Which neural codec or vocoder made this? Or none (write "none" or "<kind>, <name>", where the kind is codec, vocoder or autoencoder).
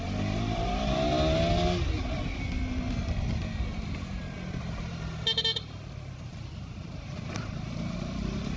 none